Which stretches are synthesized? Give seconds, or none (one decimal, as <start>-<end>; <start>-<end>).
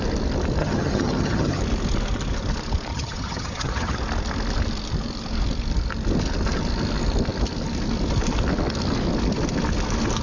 0.6-1.6; 2.9-4.0